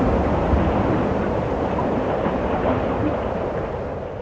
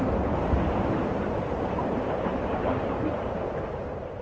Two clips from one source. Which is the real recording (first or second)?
first